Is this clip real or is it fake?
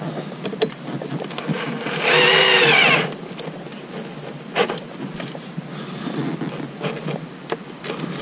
real